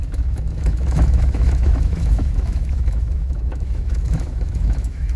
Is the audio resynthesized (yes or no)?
yes